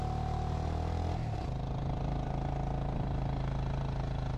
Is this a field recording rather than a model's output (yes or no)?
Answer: yes